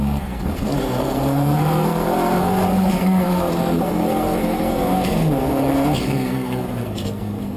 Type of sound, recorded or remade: remade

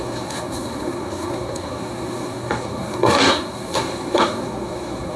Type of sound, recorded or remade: remade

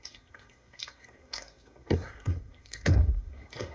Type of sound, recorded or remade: remade